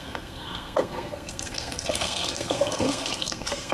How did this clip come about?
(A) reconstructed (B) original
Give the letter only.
A